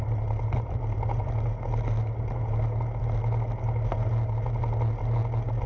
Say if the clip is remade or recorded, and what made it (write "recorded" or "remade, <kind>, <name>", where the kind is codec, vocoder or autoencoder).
recorded